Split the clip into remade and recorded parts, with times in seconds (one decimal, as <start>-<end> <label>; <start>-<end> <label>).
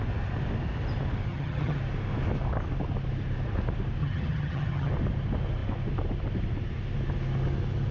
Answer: 0.0-1.3 recorded; 1.3-1.8 remade; 1.8-4.0 recorded; 4.0-4.9 remade; 4.9-7.9 recorded